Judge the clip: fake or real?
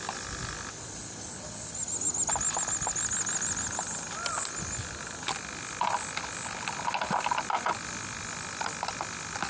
real